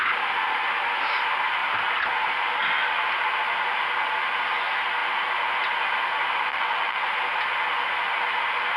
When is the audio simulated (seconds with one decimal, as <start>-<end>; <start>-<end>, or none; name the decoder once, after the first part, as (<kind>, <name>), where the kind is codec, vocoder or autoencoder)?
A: 6.5-7.1 (vocoder, WaveNeXt)